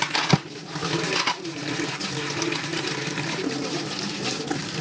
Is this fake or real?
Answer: real